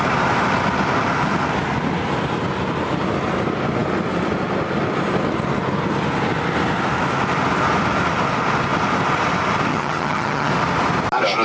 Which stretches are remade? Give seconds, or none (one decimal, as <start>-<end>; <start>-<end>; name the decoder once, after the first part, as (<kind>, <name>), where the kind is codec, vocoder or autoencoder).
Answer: 9.7-10.5 (vocoder, HiFi-GAN)